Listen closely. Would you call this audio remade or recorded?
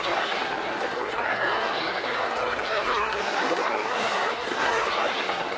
remade